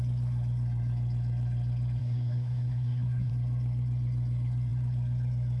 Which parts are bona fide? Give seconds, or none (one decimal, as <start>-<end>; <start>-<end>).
0.0-2.0; 3.3-5.6